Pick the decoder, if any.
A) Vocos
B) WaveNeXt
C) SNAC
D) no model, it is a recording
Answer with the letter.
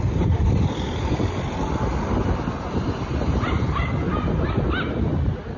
D